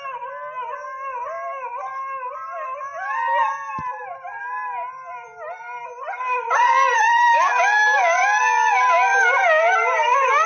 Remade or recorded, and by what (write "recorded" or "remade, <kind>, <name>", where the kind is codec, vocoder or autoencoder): recorded